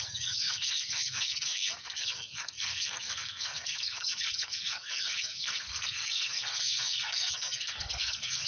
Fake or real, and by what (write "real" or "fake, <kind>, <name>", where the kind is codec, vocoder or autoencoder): fake, codec, SNAC